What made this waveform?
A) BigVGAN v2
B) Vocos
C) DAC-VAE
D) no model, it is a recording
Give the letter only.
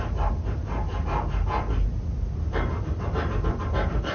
D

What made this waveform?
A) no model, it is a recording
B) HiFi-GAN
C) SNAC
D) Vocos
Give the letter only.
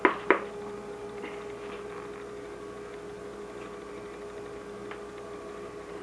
A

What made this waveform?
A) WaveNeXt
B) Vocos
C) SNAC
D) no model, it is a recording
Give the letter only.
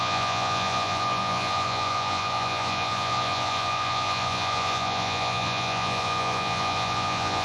B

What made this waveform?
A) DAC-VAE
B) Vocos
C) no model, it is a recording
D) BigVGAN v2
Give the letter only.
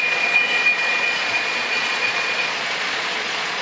B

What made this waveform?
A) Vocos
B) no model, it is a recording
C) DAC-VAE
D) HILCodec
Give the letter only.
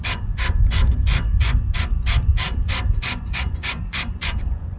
A